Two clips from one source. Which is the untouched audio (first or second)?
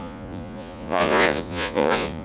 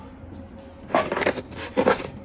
second